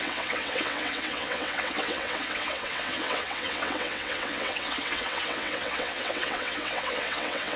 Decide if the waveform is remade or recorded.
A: remade